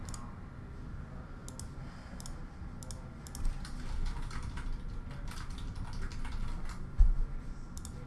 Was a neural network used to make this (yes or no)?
no